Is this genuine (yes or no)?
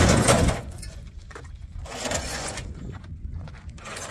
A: no